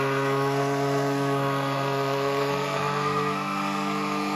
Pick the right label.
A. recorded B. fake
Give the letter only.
B